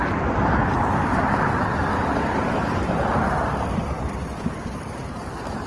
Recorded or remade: recorded